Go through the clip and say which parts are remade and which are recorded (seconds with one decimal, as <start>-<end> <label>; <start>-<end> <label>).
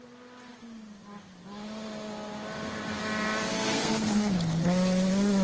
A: 0.0-3.5 recorded; 3.5-4.3 remade; 4.3-5.4 recorded